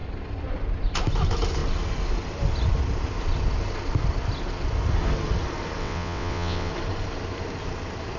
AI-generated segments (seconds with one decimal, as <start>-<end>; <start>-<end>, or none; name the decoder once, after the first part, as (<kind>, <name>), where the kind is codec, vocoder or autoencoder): 5.8-6.7 (vocoder, WaveNeXt)